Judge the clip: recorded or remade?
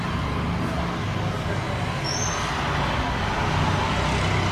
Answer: recorded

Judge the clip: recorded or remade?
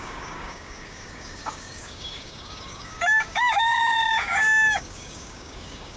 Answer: remade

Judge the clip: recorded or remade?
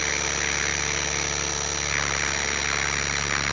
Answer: recorded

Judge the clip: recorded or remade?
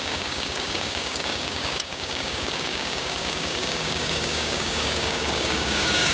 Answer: remade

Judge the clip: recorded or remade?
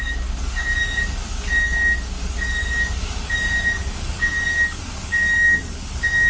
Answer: remade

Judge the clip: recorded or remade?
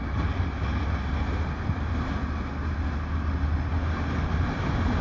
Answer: recorded